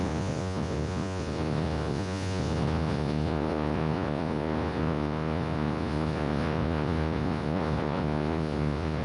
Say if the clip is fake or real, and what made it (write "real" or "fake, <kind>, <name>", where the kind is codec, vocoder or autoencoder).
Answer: fake, vocoder, Vocos